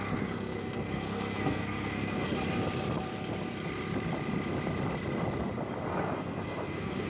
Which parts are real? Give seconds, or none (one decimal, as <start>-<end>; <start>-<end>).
2.3-5.9